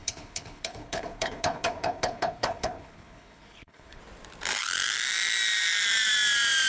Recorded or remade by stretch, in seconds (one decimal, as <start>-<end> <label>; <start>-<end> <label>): 0.0-4.0 remade; 4.0-6.7 recorded